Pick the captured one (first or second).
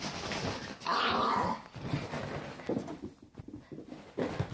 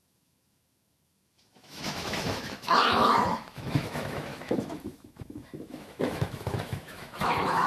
first